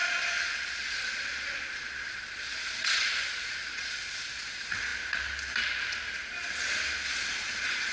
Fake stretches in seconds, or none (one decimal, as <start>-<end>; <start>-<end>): 0.0-4.9; 7.1-7.9